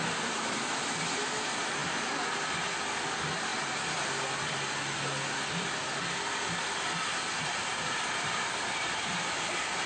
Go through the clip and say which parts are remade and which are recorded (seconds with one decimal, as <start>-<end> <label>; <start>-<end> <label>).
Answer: 0.0-9.9 recorded